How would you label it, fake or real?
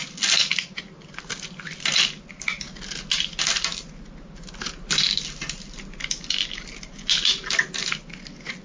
real